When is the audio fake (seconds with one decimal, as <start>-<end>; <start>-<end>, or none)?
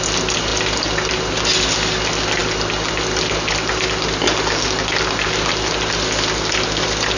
none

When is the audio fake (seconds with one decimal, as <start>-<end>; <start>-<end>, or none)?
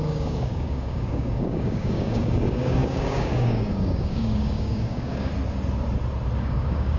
0.0-5.3; 6.4-7.0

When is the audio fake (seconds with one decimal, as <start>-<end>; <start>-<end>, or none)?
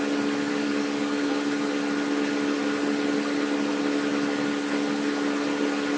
0.5-1.3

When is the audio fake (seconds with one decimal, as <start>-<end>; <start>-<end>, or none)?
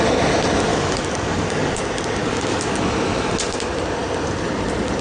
0.7-1.8; 2.2-2.8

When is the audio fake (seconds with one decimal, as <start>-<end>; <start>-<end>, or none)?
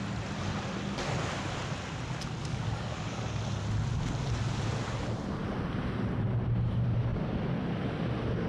2.4-3.4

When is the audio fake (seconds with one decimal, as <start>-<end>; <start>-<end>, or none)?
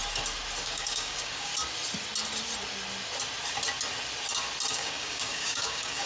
0.6-1.5; 4.7-6.1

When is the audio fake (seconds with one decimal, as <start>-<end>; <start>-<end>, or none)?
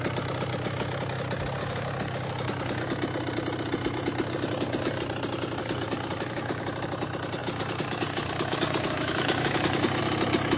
1.6-2.8; 5.6-6.6; 7.4-10.0